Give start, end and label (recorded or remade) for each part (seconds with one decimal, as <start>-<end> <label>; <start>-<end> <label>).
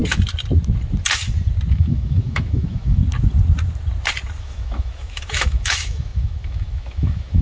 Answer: 0.0-1.7 recorded; 1.7-3.0 remade; 3.0-4.4 recorded; 4.4-7.4 remade